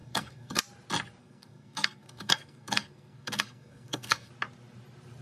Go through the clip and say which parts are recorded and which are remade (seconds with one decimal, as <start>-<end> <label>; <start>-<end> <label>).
0.0-0.6 remade; 0.6-1.2 recorded; 1.2-4.3 remade; 4.3-5.2 recorded